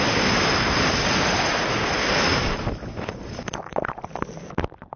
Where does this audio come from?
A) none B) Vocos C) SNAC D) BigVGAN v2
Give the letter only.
A